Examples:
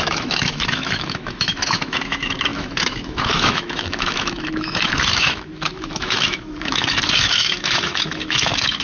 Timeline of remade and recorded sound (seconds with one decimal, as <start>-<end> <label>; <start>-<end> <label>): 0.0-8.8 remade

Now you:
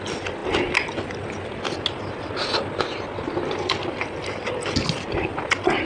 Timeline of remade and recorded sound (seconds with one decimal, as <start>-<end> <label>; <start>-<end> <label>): 0.0-5.9 recorded

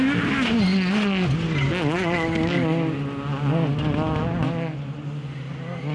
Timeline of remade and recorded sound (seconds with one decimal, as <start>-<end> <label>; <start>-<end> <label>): 0.0-5.9 recorded